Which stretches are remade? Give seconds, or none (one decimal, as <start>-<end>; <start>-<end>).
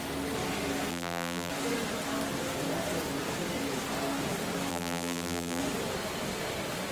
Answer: 0.9-1.5; 4.7-5.6